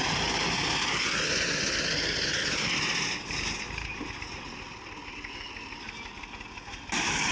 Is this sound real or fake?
real